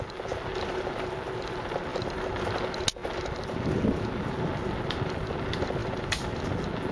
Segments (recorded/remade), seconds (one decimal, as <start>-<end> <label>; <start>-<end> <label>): 0.0-1.9 recorded; 1.9-2.4 remade; 2.4-5.8 recorded; 5.8-6.3 remade; 6.3-6.9 recorded